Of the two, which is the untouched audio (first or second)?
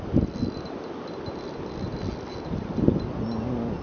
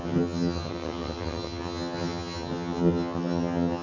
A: first